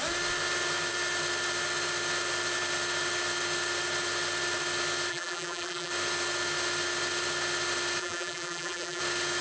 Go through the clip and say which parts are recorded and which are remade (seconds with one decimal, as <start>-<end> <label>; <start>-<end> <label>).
0.0-5.1 recorded; 5.1-5.9 remade; 5.9-8.0 recorded; 8.0-9.0 remade; 9.0-9.4 recorded